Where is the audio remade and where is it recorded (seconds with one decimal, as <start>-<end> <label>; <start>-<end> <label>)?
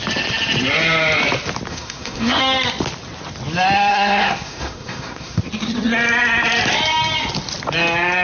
0.0-1.7 recorded; 1.7-2.4 remade; 2.4-3.9 recorded; 3.9-5.4 remade; 5.4-8.2 recorded